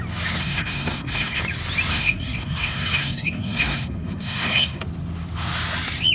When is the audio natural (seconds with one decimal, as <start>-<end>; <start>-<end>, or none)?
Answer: 0.0-0.4; 1.4-1.9; 4.8-6.1